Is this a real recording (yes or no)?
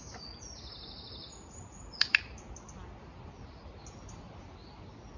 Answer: yes